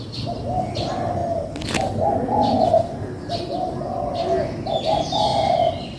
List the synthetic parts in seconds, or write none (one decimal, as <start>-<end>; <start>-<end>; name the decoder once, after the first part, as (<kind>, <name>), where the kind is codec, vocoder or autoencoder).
none